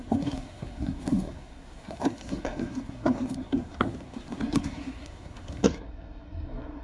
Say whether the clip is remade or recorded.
remade